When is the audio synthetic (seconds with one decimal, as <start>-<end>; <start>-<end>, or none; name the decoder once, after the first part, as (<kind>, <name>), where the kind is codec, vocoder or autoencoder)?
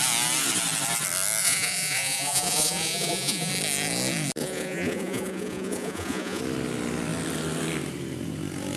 1.4-3.5 (vocoder, Vocos); 4.4-6.4